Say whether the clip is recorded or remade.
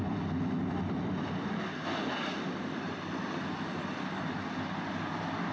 recorded